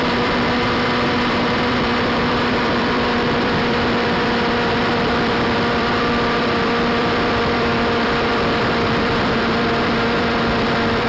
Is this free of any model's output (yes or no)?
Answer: no